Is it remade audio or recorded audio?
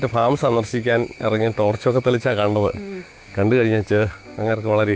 remade